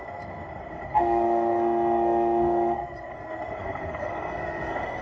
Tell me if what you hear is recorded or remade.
remade